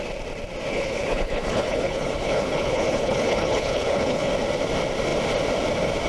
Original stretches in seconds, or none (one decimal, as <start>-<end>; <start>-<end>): 0.0-0.7; 4.3-6.1